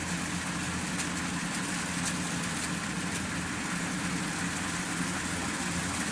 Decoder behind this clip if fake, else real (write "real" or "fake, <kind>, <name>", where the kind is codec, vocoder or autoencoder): real